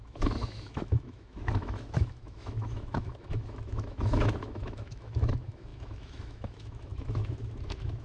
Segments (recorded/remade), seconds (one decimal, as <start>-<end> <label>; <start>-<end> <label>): 0.0-8.0 remade